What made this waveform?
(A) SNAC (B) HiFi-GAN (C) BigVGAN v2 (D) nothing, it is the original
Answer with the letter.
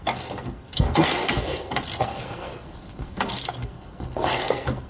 A